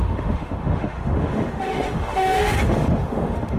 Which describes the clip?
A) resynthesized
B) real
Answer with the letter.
A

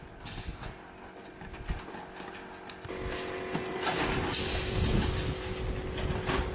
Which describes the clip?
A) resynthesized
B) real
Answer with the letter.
B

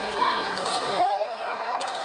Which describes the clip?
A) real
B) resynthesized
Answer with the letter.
B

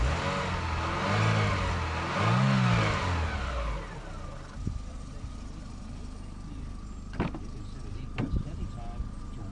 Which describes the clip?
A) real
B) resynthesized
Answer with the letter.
A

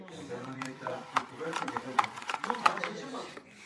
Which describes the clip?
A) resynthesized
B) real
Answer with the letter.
A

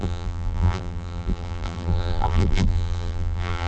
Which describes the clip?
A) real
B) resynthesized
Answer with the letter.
B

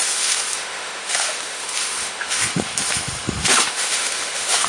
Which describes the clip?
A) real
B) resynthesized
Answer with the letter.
B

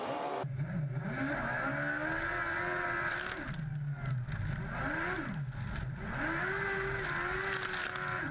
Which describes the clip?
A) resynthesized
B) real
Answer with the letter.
B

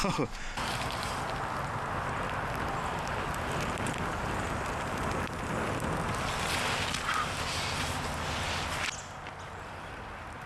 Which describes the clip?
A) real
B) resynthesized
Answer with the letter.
A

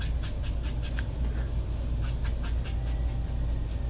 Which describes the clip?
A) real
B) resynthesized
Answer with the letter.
A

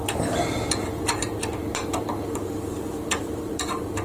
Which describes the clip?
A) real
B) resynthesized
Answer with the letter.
B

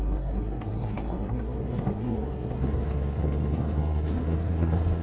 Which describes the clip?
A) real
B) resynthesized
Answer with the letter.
B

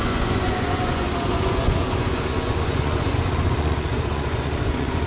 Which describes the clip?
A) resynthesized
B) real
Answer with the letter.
A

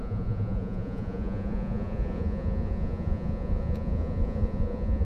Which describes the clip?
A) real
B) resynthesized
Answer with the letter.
B